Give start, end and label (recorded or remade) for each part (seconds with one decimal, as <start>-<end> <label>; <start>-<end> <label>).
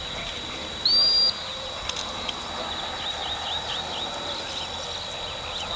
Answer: 0.0-5.8 recorded